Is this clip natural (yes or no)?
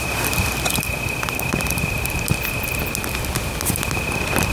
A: yes